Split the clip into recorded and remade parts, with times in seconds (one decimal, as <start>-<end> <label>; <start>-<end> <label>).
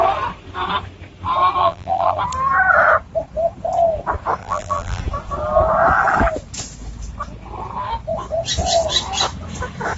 0.0-1.6 recorded; 1.6-2.2 remade; 2.2-4.4 recorded; 4.4-5.0 remade; 5.0-10.0 recorded